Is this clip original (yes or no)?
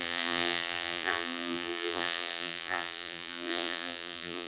no